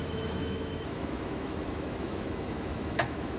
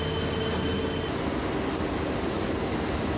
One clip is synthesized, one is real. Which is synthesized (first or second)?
first